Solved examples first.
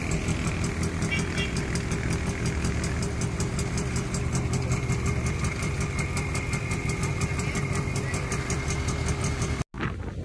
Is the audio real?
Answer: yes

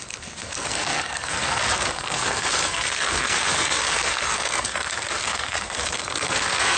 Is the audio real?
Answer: no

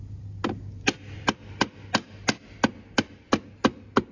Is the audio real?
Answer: yes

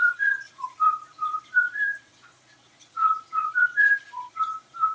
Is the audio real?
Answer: no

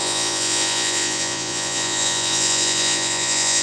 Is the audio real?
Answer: no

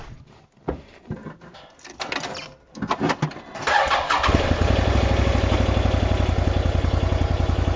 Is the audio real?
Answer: yes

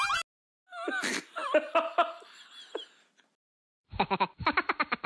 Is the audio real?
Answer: yes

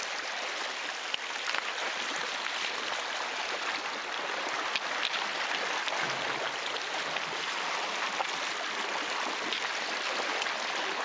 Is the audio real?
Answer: yes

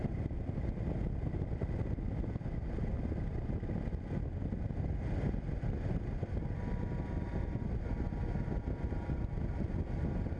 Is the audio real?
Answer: yes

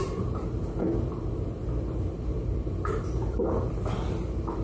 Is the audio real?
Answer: yes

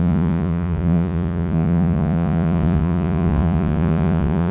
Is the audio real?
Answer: no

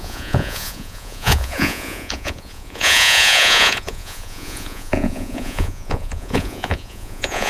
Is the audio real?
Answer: no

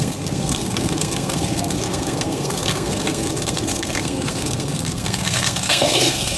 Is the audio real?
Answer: no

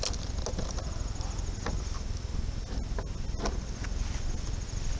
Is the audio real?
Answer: yes